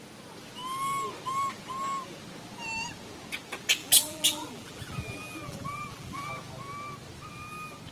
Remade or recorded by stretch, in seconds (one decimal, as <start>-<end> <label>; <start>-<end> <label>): 0.0-3.8 recorded; 3.8-6.3 remade; 6.3-7.9 recorded